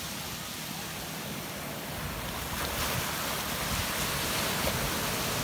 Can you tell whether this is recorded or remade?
recorded